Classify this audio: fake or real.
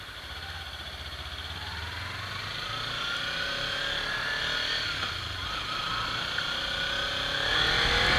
real